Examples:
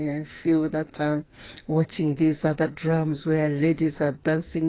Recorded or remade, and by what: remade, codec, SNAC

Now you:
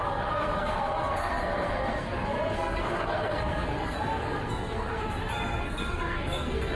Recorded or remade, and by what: remade, codec, SNAC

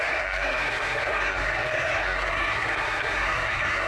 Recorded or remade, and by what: remade, codec, SNAC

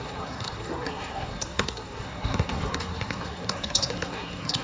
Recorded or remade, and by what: remade, codec, SNAC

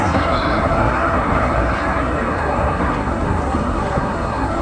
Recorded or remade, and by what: remade, codec, SNAC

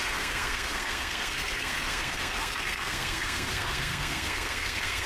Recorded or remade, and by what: remade, codec, SNAC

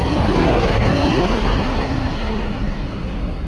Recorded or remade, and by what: remade, codec, SNAC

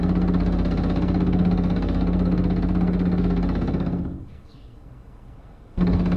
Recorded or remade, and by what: remade, codec, SNAC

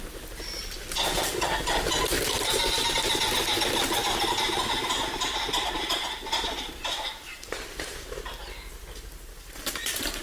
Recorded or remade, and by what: recorded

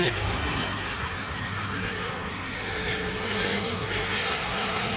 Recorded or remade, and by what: remade, codec, SNAC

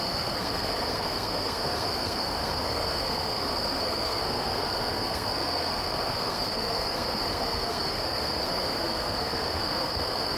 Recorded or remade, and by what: remade, codec, SNAC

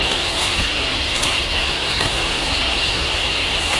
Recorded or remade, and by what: remade, codec, SNAC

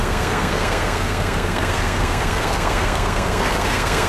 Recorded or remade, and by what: remade, codec, SNAC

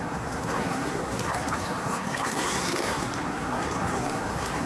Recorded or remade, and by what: remade, codec, SNAC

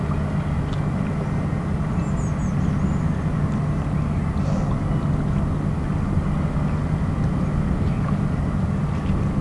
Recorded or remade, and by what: recorded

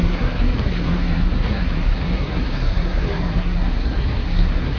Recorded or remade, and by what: remade, codec, SNAC